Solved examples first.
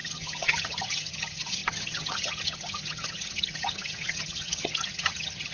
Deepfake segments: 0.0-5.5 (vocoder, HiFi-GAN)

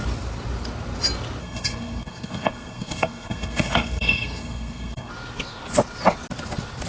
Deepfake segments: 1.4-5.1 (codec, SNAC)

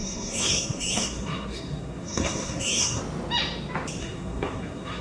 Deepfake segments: 0.0-3.0 (codec, SNAC); 4.0-5.0